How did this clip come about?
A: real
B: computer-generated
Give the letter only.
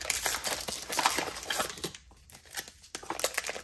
A